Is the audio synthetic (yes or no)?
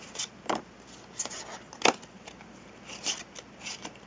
no